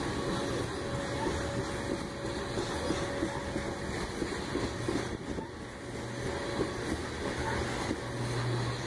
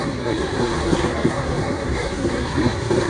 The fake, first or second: second